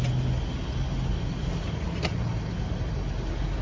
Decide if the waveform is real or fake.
real